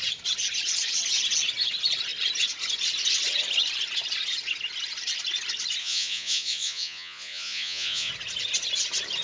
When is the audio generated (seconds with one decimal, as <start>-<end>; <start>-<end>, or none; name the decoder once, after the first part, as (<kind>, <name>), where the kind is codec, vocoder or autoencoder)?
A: 5.8-8.1 (vocoder, Vocos)